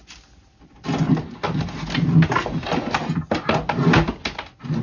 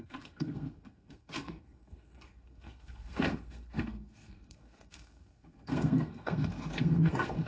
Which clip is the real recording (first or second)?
first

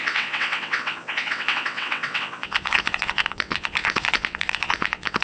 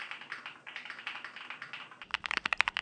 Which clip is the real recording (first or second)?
second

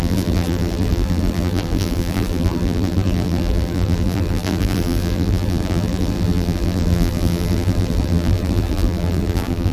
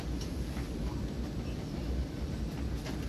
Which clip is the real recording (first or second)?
second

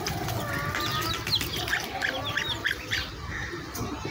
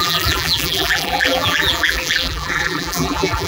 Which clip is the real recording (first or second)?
first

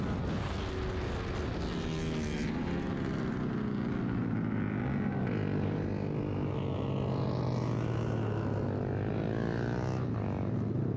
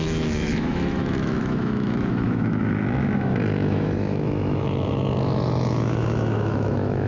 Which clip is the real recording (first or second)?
first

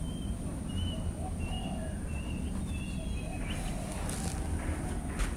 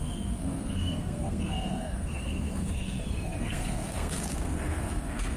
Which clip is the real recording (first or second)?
first